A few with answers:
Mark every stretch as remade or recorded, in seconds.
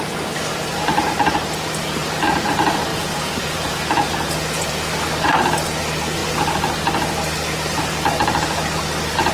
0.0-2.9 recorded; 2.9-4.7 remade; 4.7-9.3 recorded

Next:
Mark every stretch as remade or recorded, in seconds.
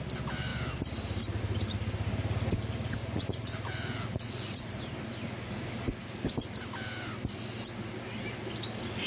0.0-3.0 recorded; 3.0-4.8 remade; 4.8-9.1 recorded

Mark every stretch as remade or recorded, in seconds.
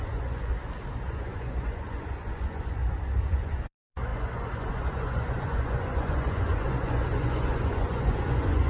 0.0-0.5 remade; 0.5-1.1 recorded; 1.1-2.8 remade; 2.8-3.3 recorded; 3.3-8.7 remade